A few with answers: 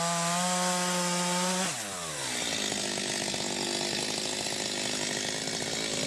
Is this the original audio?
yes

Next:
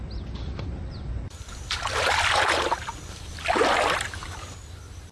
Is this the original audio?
yes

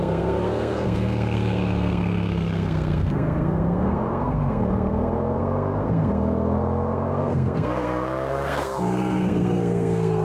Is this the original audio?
no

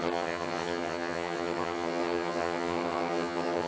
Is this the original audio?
no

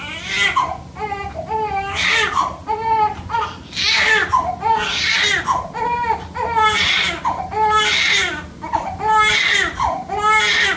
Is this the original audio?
yes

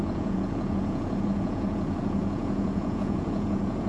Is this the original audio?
no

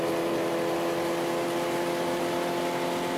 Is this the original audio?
yes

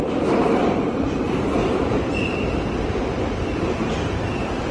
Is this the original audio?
no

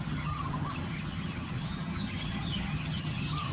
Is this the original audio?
no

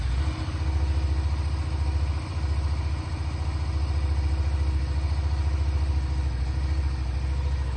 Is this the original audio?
yes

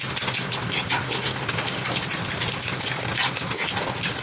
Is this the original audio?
yes